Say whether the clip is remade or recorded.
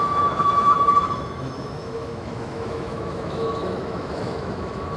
remade